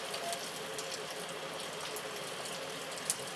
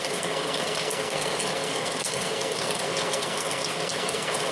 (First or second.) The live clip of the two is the first